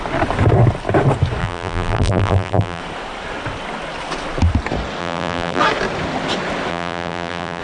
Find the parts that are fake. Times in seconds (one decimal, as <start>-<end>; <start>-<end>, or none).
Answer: 1.4-2.8; 5.0-5.6; 6.7-7.6